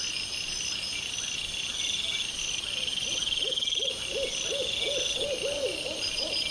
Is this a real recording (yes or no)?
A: yes